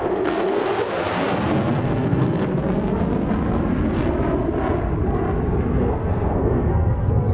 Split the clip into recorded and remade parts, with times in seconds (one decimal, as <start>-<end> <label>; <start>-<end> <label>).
0.0-0.6 remade; 0.6-1.8 recorded; 1.8-2.5 remade; 2.5-5.8 recorded; 5.8-7.3 remade